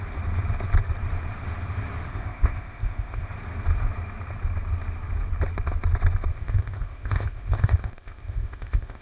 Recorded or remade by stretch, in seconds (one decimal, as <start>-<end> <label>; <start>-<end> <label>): 0.0-2.1 recorded; 2.1-3.3 remade; 3.3-6.3 recorded; 6.3-9.0 remade